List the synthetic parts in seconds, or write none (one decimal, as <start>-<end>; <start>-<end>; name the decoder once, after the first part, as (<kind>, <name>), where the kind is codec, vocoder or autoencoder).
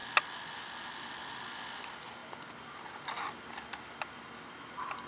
none